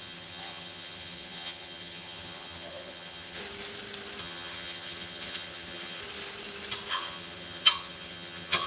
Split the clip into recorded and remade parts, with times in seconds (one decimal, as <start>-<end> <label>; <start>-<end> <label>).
0.0-3.4 remade; 3.4-4.2 recorded; 4.2-6.0 remade; 6.0-6.9 recorded; 6.9-8.7 remade